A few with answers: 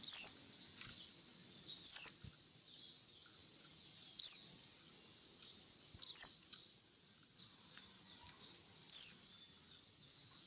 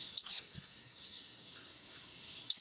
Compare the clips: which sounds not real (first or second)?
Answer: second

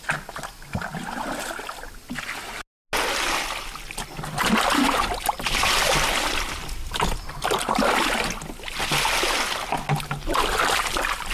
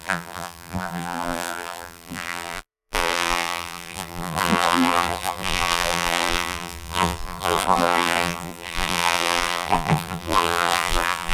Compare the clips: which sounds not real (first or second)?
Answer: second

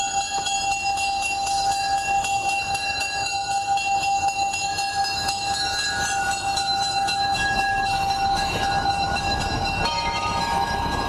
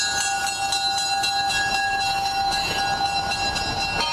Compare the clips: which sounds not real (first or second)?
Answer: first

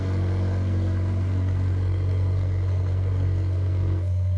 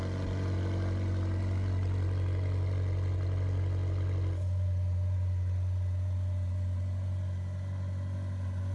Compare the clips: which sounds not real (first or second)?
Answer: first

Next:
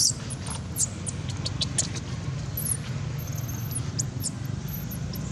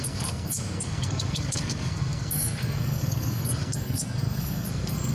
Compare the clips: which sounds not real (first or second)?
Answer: second